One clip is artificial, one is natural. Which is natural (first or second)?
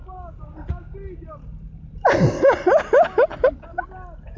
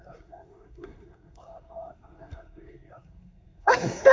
first